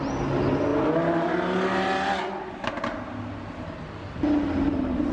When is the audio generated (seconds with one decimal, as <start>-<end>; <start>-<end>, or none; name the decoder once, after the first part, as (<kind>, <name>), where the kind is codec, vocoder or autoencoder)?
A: none